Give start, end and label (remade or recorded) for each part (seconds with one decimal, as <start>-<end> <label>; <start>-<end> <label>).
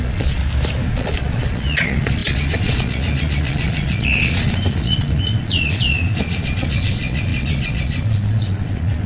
0.0-0.4 remade; 0.4-0.9 recorded; 0.9-9.1 remade